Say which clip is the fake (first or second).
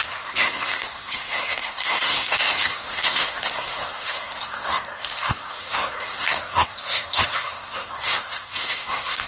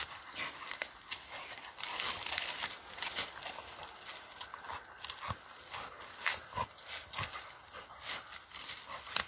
first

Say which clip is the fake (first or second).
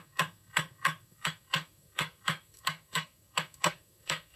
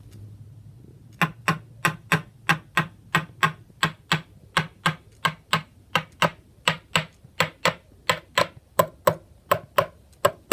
first